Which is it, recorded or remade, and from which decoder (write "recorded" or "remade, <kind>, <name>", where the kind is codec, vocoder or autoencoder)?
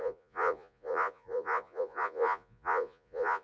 remade, vocoder, Vocos